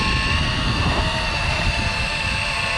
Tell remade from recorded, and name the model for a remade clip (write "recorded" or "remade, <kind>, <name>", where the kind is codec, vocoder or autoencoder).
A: recorded